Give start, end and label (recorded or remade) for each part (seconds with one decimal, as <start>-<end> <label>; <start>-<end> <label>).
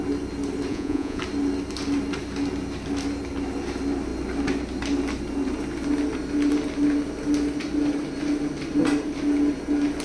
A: 0.0-0.7 recorded; 0.7-1.2 remade; 1.2-10.0 recorded